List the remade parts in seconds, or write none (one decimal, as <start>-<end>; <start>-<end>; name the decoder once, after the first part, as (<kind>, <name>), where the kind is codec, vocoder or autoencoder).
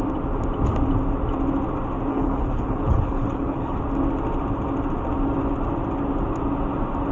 2.1-3.8 (codec, HILCodec)